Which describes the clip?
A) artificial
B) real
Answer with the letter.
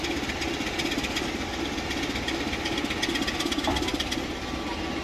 B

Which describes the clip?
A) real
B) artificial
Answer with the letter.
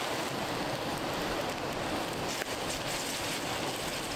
A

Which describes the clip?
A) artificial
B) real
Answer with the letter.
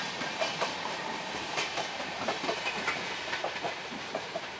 A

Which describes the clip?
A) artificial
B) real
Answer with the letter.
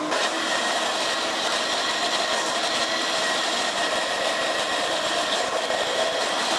B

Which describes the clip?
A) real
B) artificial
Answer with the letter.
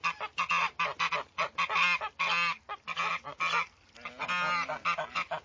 A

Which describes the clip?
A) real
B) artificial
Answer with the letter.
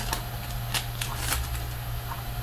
A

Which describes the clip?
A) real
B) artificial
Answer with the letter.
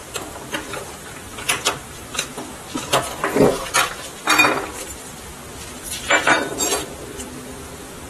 A